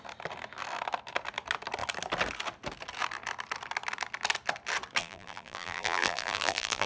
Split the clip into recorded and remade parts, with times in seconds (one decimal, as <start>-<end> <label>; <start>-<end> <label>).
0.0-5.0 recorded; 5.0-6.9 remade